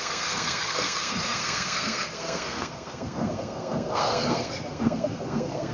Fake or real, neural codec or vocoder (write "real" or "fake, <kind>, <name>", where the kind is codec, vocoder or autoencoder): fake, codec, SNAC